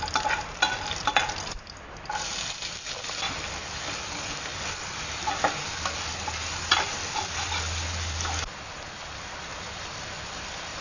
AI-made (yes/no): no